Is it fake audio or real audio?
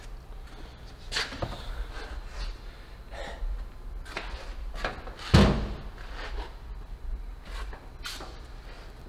real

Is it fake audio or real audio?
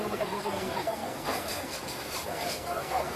fake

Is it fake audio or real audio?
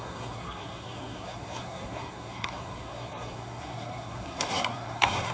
fake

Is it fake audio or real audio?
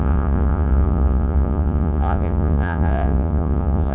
fake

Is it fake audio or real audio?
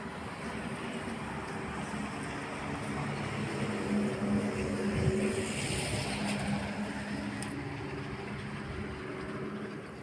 real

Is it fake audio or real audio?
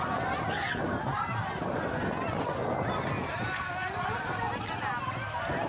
real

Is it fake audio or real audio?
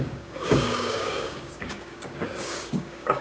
fake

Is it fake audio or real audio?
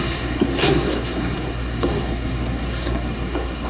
fake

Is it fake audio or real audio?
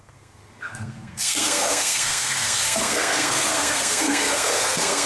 fake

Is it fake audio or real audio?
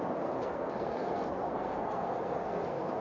fake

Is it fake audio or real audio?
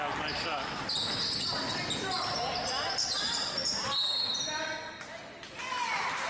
real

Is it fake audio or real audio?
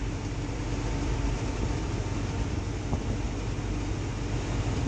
real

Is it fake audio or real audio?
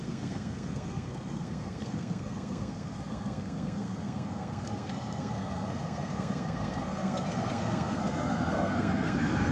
fake